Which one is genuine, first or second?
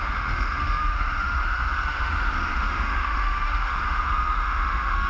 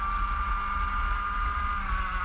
second